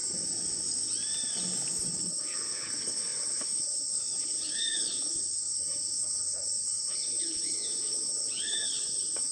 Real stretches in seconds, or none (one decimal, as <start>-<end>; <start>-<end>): 0.0-1.9